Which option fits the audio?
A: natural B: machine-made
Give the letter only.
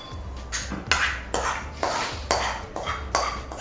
A